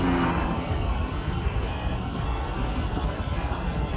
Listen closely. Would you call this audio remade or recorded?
remade